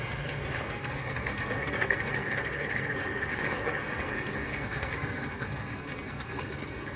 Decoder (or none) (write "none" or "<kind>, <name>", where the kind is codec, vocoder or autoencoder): codec, SNAC